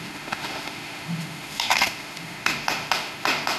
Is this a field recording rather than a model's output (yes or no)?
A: no